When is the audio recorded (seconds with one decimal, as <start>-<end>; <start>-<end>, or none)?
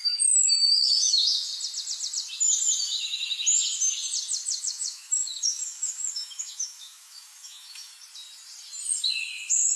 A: 1.5-4.6; 7.9-9.8